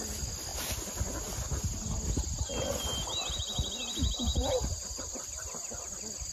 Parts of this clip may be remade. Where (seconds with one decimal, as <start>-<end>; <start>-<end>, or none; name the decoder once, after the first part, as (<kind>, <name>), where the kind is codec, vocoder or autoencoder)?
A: 4.3-5.6 (vocoder, BigVGAN v2)